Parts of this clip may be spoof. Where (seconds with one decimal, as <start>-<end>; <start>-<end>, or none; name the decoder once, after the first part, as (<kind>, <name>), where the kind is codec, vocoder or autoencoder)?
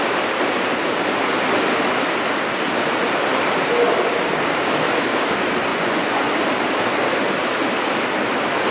5.7-6.3 (vocoder, Vocos)